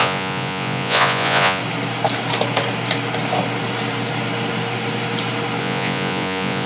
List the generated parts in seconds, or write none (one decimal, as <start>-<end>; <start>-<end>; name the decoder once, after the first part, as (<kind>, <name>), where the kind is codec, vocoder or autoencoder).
0.0-1.6 (vocoder, Vocos); 5.6-6.7